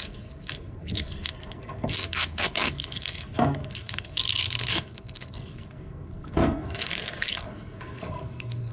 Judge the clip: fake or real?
fake